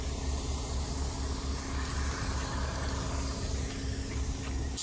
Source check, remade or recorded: recorded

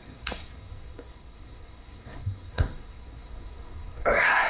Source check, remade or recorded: remade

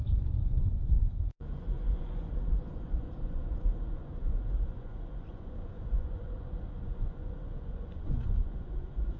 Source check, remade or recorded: remade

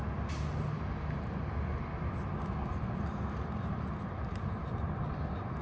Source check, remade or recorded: recorded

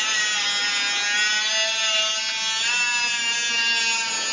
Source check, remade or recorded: recorded